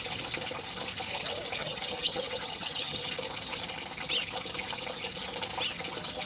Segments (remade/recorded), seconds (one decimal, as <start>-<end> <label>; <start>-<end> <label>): 0.0-1.6 recorded; 1.6-3.1 remade; 3.1-6.3 recorded